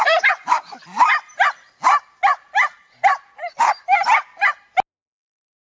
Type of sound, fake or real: real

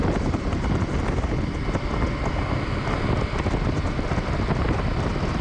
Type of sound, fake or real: real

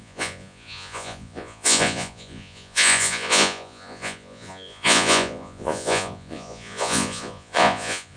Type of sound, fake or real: fake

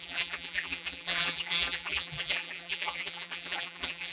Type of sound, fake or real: fake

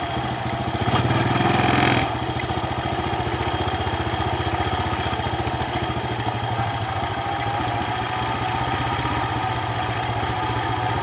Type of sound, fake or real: real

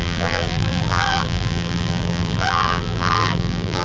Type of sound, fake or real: fake